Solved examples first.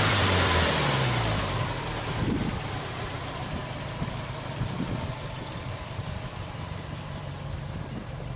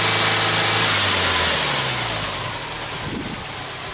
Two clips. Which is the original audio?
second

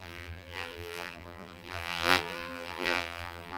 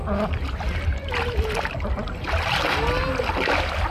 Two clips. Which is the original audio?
second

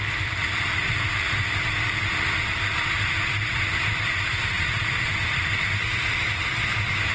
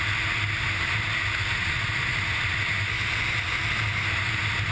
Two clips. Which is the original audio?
second